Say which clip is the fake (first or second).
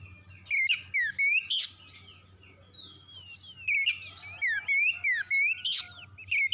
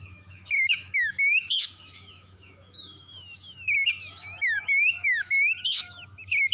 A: second